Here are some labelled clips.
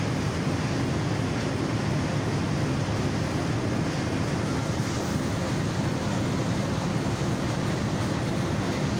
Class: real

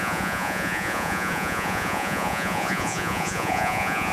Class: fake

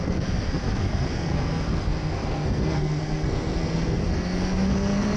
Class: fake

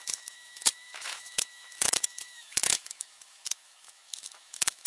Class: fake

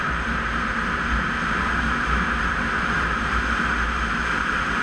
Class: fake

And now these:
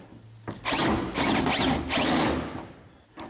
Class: real